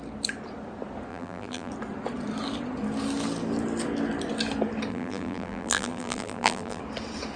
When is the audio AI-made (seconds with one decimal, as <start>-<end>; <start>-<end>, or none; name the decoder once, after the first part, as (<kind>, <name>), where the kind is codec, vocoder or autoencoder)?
1.1-1.7 (vocoder, BigVGAN v2); 4.9-6.8